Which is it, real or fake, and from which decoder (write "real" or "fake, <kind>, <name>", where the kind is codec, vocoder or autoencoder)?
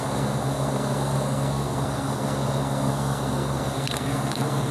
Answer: fake, codec, SNAC